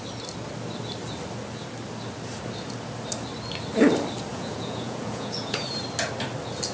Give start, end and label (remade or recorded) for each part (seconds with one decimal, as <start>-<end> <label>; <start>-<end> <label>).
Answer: 0.0-4.3 recorded; 4.3-5.7 remade; 5.7-6.7 recorded